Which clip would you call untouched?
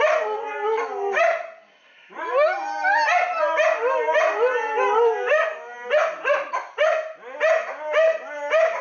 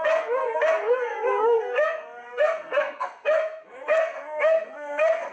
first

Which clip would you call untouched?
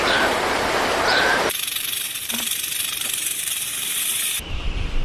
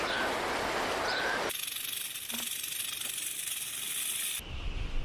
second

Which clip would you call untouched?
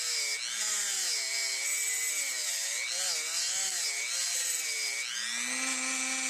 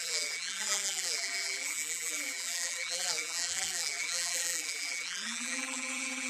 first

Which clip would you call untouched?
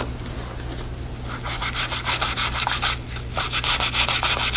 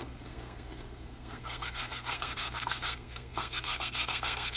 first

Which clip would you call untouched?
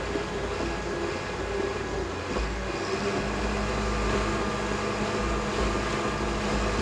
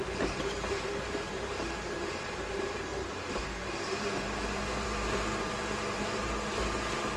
first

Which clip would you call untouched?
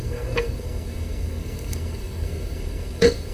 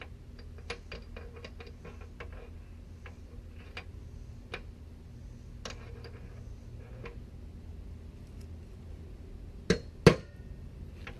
second